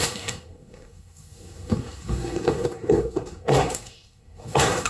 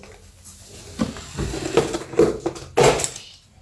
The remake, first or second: first